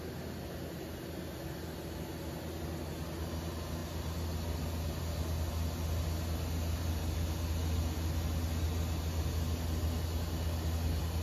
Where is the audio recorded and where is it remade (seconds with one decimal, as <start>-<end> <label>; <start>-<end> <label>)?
0.0-11.2 recorded